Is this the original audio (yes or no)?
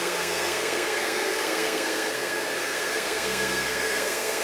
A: no